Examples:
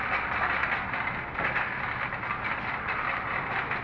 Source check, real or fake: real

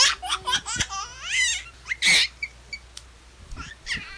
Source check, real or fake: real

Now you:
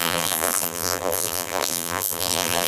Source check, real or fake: fake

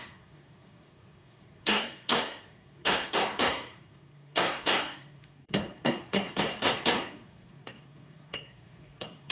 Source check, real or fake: fake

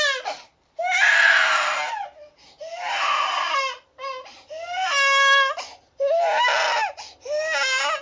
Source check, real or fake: real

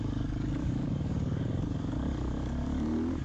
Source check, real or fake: fake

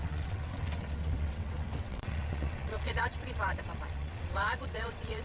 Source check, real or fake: fake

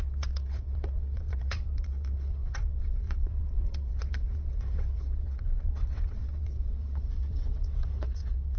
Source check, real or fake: fake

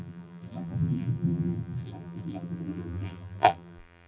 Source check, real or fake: fake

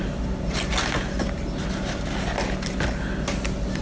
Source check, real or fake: real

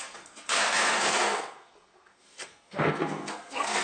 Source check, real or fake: fake